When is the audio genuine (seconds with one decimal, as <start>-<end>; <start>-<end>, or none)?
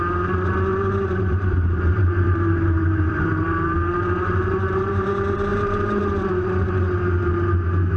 0.0-0.7; 5.1-5.5; 6.0-8.0